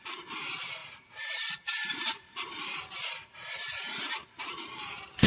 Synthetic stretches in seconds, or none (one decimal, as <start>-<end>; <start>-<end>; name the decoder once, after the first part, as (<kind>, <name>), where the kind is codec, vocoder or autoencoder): 0.0-5.3 (vocoder, BigVGAN v2)